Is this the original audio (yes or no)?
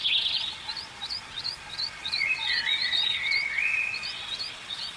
no